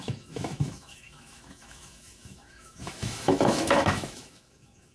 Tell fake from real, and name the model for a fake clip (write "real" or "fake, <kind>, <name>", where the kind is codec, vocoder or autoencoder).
fake, autoencoder, DAC-VAE